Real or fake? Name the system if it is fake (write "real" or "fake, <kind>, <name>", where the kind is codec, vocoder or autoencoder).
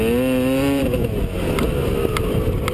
real